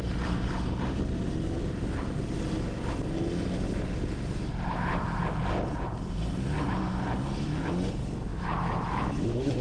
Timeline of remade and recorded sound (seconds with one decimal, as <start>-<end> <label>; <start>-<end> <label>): 0.0-8.3 recorded; 8.3-9.6 remade